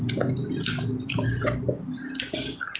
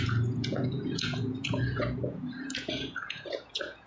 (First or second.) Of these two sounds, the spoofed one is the second